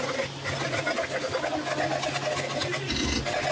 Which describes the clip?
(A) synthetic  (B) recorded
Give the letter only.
B